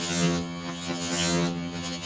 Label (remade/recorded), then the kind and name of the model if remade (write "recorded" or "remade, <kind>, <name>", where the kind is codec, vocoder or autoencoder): remade, vocoder, HiFi-GAN